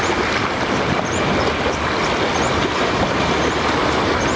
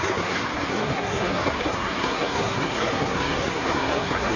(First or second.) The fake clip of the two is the second